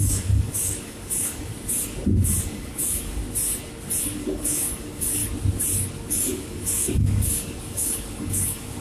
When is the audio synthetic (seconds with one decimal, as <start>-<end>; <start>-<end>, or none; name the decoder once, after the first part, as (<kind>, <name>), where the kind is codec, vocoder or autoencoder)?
0.0-1.5 (codec, DAC); 2.4-3.2; 4.0-5.2; 6.1-8.8